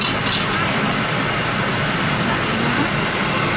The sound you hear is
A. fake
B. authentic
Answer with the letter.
B